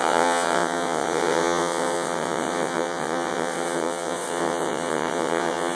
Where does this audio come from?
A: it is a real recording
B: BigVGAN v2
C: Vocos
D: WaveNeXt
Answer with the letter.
D